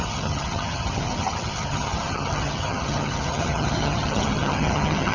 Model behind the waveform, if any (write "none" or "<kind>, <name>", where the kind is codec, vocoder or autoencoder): vocoder, HiFi-GAN